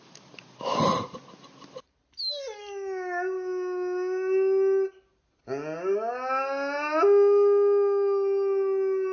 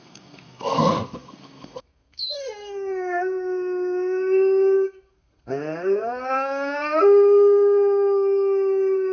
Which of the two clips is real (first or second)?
first